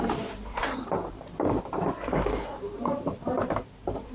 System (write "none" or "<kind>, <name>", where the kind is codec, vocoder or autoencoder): vocoder, BigVGAN v2